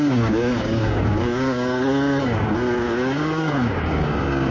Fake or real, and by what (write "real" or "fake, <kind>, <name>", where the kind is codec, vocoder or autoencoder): fake, codec, DAC